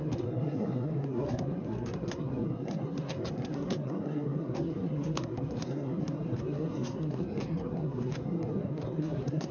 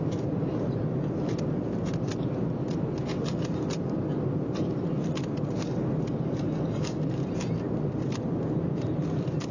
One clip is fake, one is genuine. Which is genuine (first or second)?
second